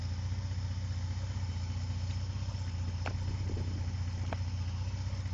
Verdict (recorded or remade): recorded